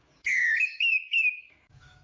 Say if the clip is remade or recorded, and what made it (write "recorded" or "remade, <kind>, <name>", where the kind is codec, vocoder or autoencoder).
remade, codec, DAC